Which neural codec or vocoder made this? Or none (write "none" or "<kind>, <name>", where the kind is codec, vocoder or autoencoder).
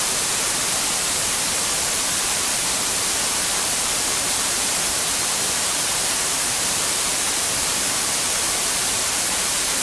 vocoder, BigVGAN v2